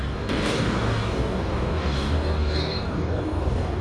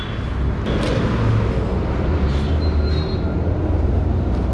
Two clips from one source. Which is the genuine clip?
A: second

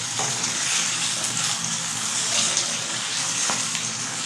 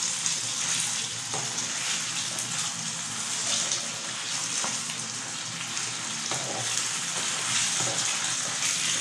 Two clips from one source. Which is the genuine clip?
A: second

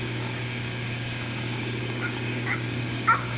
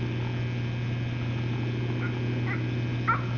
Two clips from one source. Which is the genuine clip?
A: second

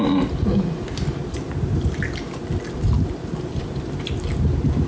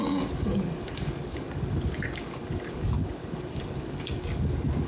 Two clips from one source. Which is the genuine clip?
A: first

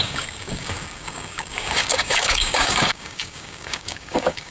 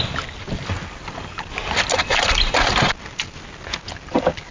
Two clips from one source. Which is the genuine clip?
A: second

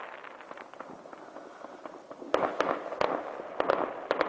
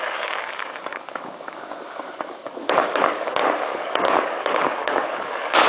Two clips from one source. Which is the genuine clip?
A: first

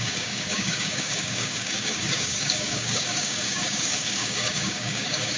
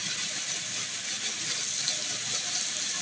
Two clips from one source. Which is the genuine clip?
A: second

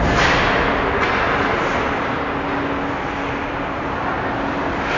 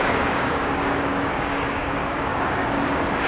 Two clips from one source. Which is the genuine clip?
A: first